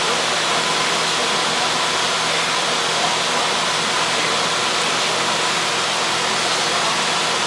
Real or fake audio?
real